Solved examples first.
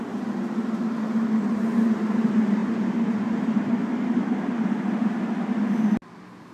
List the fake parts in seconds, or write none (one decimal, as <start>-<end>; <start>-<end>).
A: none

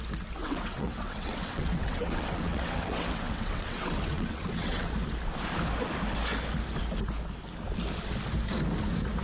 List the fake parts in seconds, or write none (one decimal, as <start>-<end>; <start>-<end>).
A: 0.4-4.9

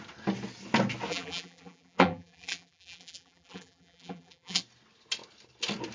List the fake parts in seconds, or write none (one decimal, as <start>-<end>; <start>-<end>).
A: 1.1-4.6

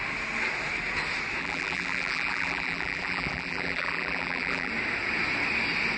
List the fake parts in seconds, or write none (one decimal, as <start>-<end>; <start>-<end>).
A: 1.4-4.7